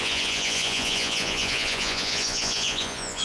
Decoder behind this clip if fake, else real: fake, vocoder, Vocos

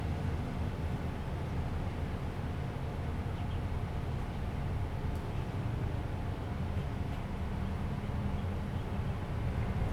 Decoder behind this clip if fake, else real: real